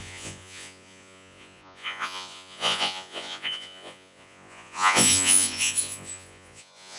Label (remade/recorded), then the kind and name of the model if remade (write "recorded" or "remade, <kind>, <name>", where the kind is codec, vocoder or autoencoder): remade, vocoder, Vocos